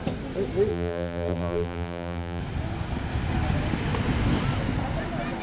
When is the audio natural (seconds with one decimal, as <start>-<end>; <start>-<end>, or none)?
0.0-0.7; 2.4-5.4